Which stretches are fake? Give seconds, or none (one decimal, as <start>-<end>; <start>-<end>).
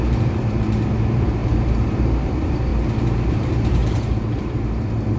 0.0-2.7; 3.3-5.2